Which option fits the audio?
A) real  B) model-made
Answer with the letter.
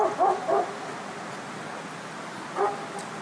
A